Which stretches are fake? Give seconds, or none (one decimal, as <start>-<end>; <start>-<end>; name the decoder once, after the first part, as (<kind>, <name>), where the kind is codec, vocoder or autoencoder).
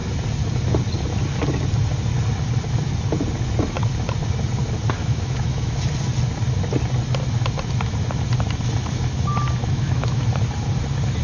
5.0-5.8 (autoencoder, DAC-VAE); 9.6-10.3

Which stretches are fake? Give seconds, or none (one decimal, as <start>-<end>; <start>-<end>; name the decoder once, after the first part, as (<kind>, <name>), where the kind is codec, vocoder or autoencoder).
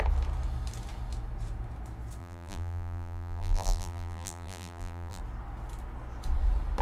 2.2-5.2 (vocoder, BigVGAN v2)